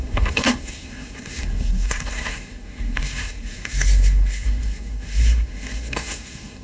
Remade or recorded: remade